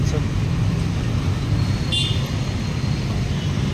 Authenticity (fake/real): real